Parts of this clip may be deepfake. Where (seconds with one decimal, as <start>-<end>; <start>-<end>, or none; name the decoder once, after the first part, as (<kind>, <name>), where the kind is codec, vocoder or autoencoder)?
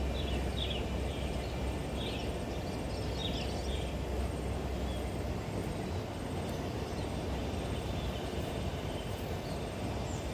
5.6-6.1 (vocoder, BigVGAN v2); 8.3-10.3